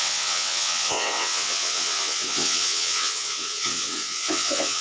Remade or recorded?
remade